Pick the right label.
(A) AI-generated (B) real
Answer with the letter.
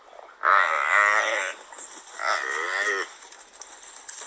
B